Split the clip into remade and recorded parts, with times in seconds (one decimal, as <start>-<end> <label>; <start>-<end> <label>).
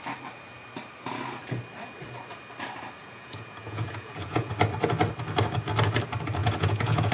0.0-3.0 recorded; 3.0-4.5 remade; 4.5-6.4 recorded; 6.4-7.1 remade